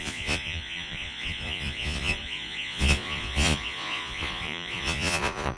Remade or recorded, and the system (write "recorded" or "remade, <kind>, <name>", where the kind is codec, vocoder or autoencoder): remade, vocoder, Vocos